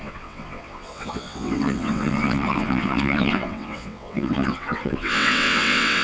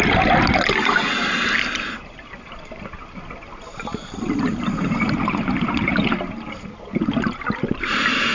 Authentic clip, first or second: second